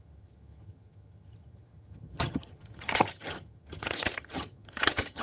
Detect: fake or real fake